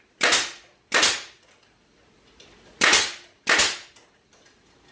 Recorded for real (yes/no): yes